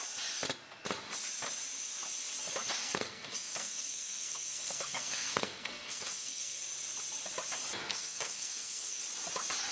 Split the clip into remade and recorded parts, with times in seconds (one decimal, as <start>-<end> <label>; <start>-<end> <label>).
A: 0.0-2.8 recorded; 2.8-6.6 remade; 6.6-7.9 recorded; 7.9-9.0 remade; 9.0-9.7 recorded